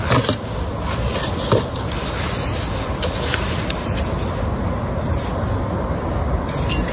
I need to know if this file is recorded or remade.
recorded